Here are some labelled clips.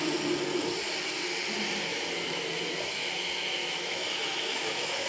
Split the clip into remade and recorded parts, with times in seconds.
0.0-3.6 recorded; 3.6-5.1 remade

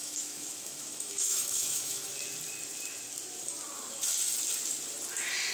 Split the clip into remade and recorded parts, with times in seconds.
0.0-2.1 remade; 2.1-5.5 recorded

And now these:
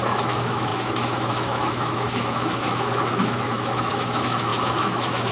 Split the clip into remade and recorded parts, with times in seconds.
0.0-5.3 remade

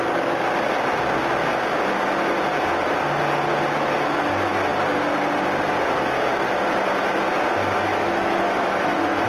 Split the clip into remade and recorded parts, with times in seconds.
0.0-7.9 recorded; 7.9-9.3 remade

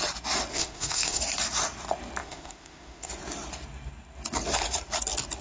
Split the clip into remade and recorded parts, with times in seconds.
0.0-0.5 recorded; 0.5-1.2 remade; 1.2-2.2 recorded; 2.2-3.1 remade; 3.1-5.4 recorded

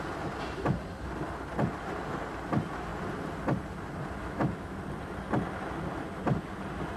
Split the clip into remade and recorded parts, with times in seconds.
0.0-4.2 recorded; 4.2-4.8 remade; 4.8-7.0 recorded